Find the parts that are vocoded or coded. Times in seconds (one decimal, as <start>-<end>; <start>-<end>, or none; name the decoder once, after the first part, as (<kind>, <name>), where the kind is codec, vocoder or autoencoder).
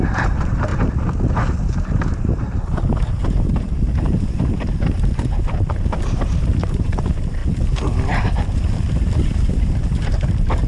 0.0-0.7 (vocoder, BigVGAN v2); 1.3-7.4; 9.5-10.7